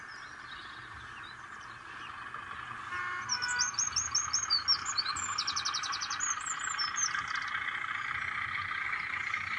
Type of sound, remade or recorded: recorded